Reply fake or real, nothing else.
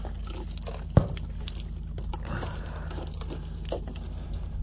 real